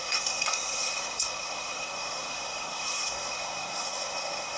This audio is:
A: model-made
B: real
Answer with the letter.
A